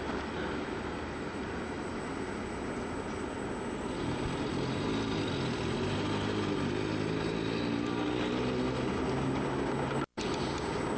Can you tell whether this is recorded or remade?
recorded